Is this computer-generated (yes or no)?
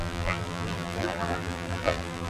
yes